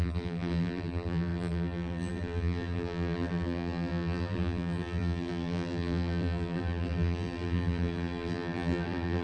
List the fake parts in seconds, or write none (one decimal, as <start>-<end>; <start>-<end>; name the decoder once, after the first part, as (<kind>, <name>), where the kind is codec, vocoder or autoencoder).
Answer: 0.0-9.2 (vocoder, BigVGAN v2)